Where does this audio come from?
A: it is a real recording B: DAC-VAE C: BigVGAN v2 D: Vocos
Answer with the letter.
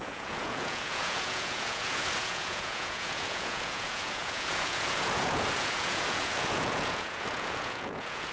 D